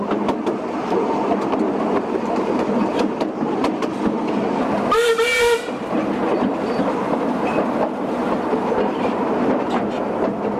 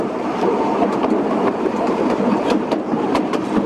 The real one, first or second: first